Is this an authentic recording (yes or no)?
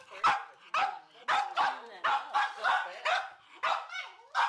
yes